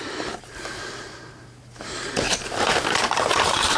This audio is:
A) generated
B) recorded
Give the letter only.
A